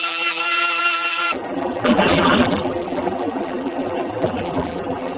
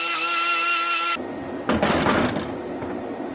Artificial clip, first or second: first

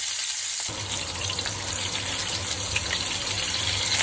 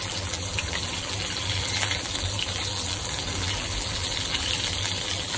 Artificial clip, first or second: second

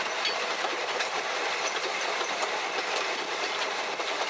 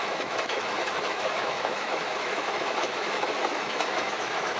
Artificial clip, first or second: second